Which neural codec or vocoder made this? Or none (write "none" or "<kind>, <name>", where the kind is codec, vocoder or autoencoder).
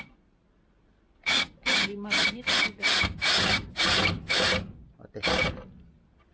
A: none